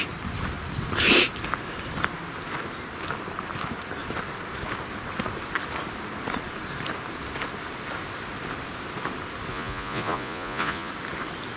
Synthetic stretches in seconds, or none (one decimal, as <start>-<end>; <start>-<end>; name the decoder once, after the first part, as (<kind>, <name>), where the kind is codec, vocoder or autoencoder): 9.5-10.9 (vocoder, Vocos)